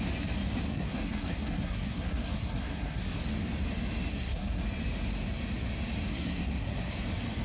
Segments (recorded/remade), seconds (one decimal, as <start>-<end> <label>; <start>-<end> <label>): 0.0-0.7 recorded; 0.7-3.2 remade; 3.2-4.1 recorded; 4.1-4.6 remade; 4.6-6.1 recorded; 6.1-6.9 remade; 6.9-7.4 recorded